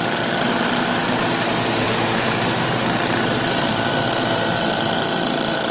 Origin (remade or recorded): recorded